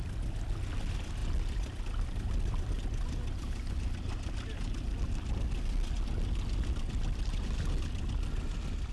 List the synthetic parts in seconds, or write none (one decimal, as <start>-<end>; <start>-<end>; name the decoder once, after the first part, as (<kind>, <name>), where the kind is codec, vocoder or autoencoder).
none

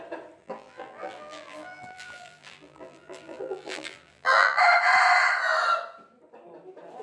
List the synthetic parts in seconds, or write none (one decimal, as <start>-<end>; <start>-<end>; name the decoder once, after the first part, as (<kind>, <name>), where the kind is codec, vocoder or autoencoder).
0.4-4.6 (vocoder, BigVGAN v2)